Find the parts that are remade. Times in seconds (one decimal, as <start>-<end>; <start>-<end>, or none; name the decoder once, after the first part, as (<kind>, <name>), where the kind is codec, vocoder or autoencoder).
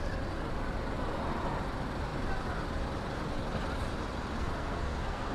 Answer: 4.4-5.3 (codec, SNAC)